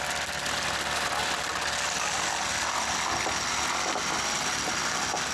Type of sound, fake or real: real